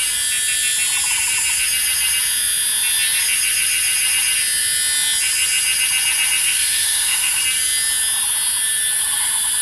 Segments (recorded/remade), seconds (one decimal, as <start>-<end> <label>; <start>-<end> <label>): 0.0-6.4 recorded; 6.4-7.4 remade; 7.4-9.6 recorded